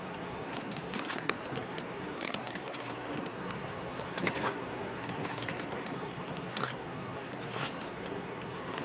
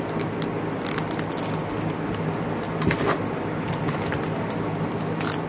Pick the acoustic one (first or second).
second